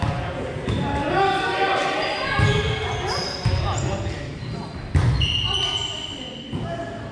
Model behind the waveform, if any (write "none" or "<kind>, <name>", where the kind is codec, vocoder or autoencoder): none